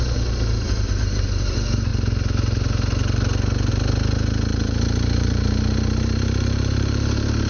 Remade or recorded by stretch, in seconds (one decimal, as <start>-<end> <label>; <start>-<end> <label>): 0.0-4.5 recorded; 4.5-7.5 remade